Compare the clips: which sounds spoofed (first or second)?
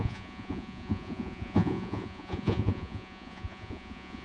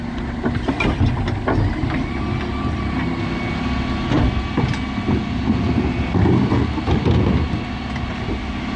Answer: first